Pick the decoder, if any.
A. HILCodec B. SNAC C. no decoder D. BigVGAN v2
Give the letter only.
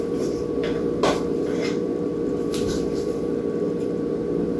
D